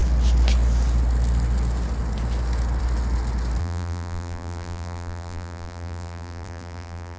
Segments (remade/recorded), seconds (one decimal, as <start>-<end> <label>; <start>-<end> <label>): 0.0-3.6 recorded; 3.6-7.2 remade

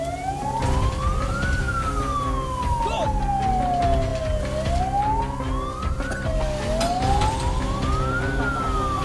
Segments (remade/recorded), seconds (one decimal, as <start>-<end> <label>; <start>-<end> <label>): 0.0-9.0 recorded

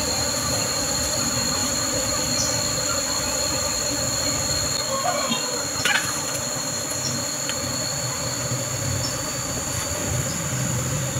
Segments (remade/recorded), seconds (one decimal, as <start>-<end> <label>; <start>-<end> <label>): 0.0-1.6 recorded; 1.6-2.1 remade; 2.1-11.2 recorded

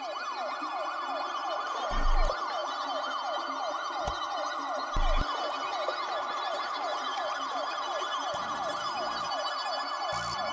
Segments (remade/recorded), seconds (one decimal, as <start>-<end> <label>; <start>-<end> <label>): 0.0-6.5 recorded; 6.5-9.5 remade; 9.5-10.5 recorded

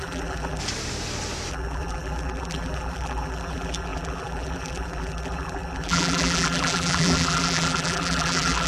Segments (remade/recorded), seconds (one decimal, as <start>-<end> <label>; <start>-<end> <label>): 0.0-0.6 remade; 0.6-1.5 recorded; 1.5-8.7 remade

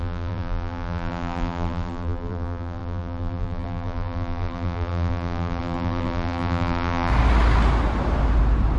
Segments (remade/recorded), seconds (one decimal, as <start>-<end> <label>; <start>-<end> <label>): 0.0-7.1 remade; 7.1-8.8 recorded